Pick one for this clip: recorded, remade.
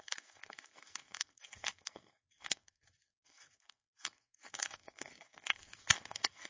remade